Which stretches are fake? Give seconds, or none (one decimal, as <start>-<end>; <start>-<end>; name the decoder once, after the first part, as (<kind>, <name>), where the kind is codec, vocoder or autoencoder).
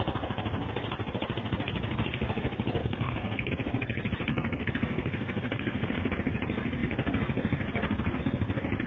2.8-3.5 (codec, SNAC); 4.3-6.1